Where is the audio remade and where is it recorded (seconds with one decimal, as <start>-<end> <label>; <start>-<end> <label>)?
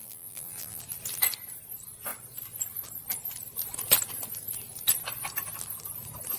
0.0-0.8 remade; 0.8-6.4 recorded